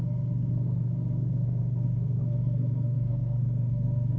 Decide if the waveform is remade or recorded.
remade